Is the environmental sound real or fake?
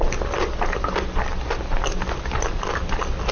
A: real